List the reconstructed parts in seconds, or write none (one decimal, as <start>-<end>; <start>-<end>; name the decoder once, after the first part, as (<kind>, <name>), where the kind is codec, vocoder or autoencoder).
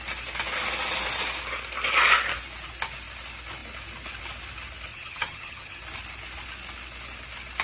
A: 4.9-5.8 (vocoder, HiFi-GAN)